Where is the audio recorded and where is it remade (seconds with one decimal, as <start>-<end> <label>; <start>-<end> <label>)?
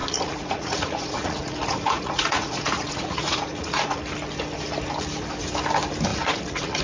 0.0-4.0 remade; 4.0-6.1 recorded; 6.1-6.8 remade